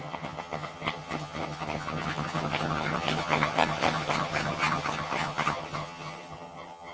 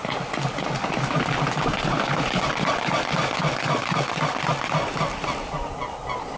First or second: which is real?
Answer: second